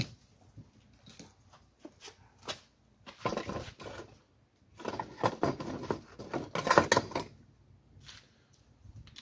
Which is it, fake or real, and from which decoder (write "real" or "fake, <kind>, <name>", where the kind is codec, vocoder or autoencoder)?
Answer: real